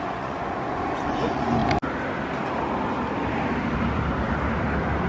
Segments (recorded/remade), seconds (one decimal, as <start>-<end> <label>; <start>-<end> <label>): 0.0-1.6 remade; 1.6-5.1 recorded